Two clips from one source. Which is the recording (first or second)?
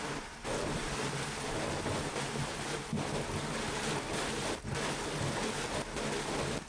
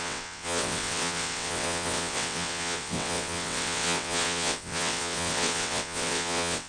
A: first